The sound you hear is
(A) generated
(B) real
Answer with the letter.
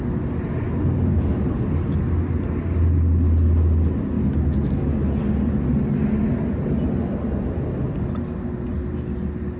B